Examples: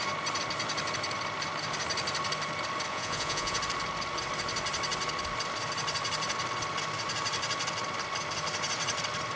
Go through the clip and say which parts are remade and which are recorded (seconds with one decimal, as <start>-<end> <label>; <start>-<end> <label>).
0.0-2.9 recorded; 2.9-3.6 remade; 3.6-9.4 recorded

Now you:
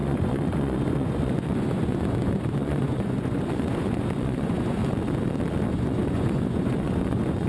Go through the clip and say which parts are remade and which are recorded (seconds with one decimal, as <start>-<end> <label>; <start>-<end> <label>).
0.0-4.8 remade; 4.8-5.7 recorded; 5.7-7.5 remade

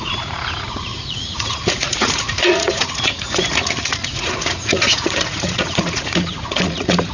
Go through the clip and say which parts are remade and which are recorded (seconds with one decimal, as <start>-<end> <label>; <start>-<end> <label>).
0.0-7.1 remade

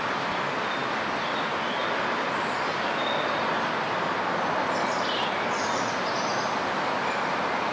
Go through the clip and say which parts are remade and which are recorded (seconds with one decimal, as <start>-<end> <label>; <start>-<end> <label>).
0.0-7.7 recorded